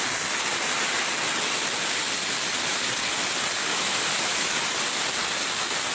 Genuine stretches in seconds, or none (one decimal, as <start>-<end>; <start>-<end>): 0.0-3.7; 4.6-5.9